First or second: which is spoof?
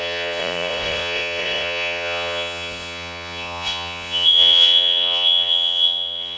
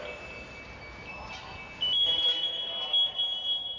first